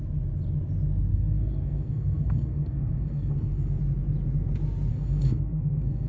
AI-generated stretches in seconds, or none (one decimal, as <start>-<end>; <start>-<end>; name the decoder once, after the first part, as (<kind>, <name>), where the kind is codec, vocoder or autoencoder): 1.1-3.8 (codec, SNAC); 4.9-6.1

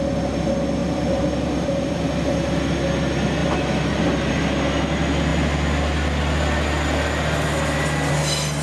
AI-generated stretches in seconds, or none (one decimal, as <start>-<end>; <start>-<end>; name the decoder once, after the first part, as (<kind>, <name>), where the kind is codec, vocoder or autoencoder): 0.8-2.7 (vocoder, BigVGAN v2); 3.4-4.3

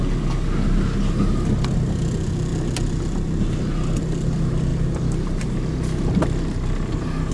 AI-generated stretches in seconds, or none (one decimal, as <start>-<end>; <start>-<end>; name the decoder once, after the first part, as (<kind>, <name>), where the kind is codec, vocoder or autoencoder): none

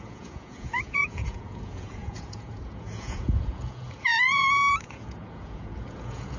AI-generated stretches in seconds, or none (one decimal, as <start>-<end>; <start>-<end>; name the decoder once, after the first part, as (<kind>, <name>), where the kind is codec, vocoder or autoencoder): 0.0-6.4 (vocoder, Vocos)